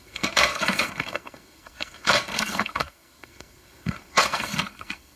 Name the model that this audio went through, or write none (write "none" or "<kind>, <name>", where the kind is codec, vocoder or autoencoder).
codec, SNAC